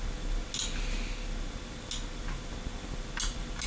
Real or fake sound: real